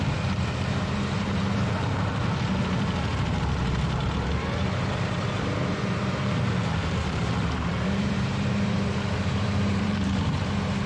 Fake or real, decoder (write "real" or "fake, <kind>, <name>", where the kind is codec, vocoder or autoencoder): fake, vocoder, BigVGAN v2